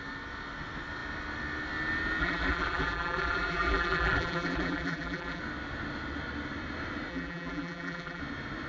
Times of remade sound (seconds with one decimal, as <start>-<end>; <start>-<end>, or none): 2.2-5.4; 7.1-8.2